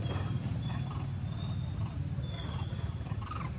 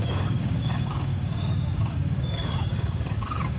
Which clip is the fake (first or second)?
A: second